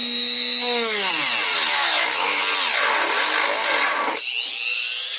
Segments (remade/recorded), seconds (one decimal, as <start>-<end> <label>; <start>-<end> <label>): 0.0-1.1 remade; 1.1-1.5 recorded; 1.5-2.4 remade; 2.4-5.2 recorded